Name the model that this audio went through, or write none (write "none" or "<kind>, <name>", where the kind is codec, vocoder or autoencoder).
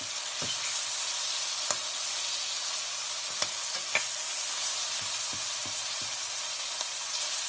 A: none